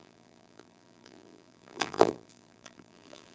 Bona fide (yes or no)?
no